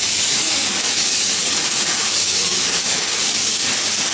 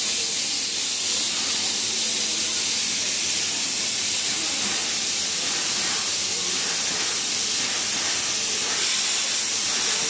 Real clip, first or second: second